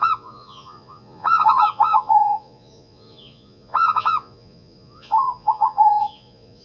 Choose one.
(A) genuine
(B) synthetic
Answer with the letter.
B